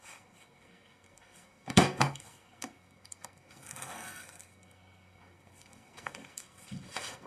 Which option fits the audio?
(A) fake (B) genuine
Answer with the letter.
A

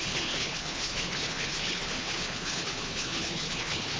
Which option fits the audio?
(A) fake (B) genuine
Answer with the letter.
A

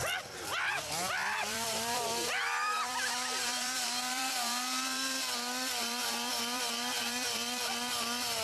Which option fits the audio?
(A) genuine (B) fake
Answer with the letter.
B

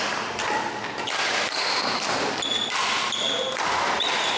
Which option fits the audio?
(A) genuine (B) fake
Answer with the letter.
A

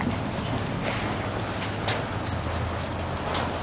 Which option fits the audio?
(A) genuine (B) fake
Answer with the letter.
A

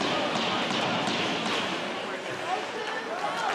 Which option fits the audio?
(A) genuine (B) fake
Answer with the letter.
A